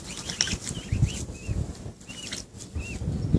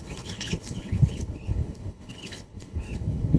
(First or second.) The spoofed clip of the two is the second